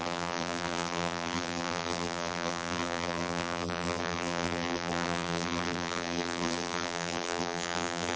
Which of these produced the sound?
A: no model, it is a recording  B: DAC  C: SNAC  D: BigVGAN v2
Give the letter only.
D